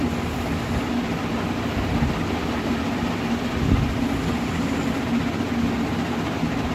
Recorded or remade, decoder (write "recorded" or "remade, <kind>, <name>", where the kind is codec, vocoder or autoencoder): recorded